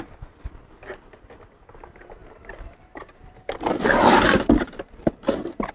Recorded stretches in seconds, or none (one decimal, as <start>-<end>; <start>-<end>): 0.0-2.2